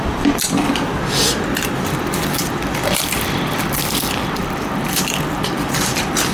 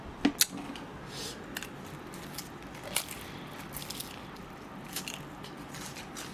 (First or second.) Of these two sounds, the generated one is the first